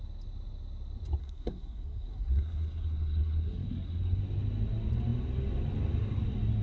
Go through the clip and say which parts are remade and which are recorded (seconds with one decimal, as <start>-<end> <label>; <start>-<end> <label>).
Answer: 0.0-1.2 recorded; 1.2-4.2 remade; 4.2-6.6 recorded